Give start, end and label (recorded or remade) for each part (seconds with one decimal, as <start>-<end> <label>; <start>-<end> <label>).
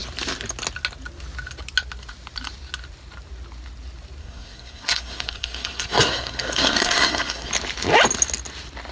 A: 0.0-4.2 recorded; 4.2-7.5 remade; 7.5-8.9 recorded